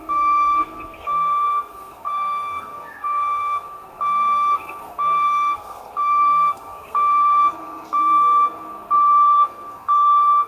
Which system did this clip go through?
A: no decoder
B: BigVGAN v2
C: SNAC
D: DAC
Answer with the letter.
C